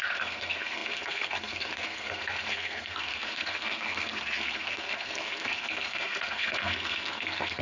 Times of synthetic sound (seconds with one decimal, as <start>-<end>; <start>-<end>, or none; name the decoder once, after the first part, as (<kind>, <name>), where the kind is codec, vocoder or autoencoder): 0.0-7.6 (codec, SNAC)